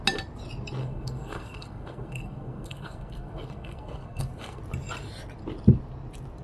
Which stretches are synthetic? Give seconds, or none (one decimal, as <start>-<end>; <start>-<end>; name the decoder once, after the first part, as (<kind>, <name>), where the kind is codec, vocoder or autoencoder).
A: 0.8-4.6 (codec, SNAC)